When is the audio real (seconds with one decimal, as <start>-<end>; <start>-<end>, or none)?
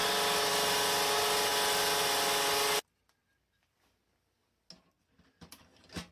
0.0-6.1